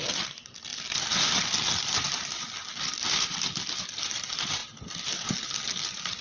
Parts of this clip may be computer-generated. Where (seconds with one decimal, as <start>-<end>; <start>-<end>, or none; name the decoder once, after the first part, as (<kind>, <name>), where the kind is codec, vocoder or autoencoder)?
none